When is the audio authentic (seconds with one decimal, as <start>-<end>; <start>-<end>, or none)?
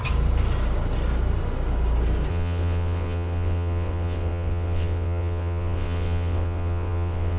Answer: 0.0-2.3